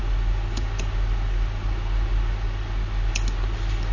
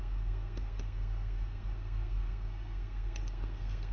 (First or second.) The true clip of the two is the first